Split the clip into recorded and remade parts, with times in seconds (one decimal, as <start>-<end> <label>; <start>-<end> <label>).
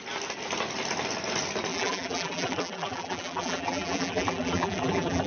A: 0.0-1.7 recorded; 1.7-5.3 remade